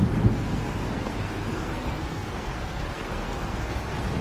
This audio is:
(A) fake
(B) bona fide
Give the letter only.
A